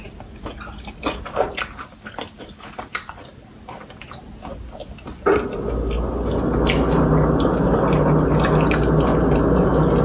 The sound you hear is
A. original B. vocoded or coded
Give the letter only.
A